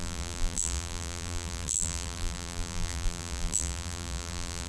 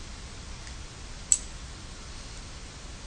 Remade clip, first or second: first